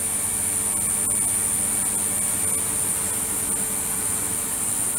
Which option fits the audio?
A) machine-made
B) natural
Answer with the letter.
B